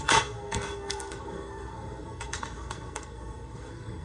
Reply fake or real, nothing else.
fake